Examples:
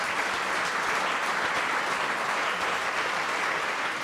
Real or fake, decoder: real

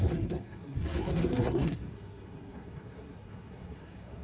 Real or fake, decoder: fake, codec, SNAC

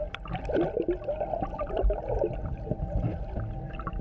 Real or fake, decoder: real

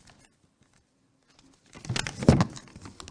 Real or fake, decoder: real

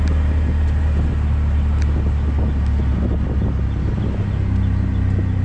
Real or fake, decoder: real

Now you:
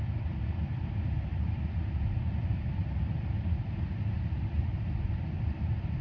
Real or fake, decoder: real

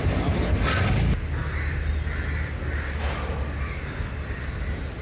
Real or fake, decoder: real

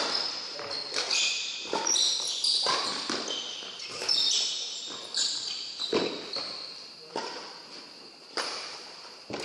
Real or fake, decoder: real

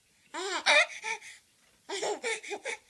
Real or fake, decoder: real